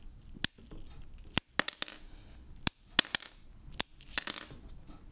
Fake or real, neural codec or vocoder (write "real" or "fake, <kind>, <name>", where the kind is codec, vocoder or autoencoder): real